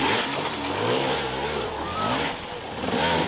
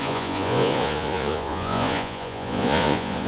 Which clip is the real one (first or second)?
first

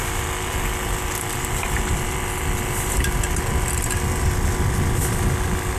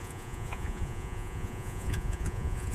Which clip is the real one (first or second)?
first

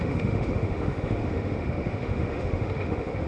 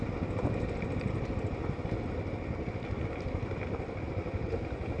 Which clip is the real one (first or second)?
second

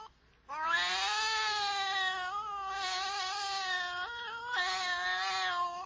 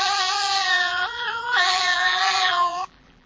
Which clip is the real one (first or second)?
first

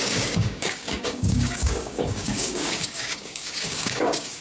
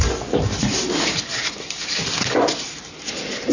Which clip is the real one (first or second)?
second